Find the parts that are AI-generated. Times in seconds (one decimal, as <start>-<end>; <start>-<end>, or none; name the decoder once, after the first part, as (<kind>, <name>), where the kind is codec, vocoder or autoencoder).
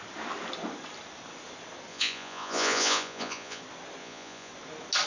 1.9-3.6 (vocoder, Vocos); 4.0-4.5